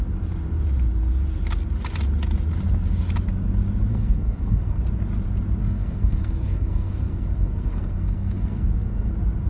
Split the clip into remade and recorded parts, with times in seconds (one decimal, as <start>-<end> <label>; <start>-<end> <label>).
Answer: 0.0-3.9 recorded; 3.9-4.8 remade; 4.8-5.6 recorded; 5.6-9.1 remade; 9.1-9.5 recorded